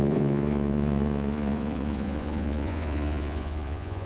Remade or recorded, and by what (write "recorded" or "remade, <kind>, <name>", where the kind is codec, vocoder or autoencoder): remade, vocoder, Vocos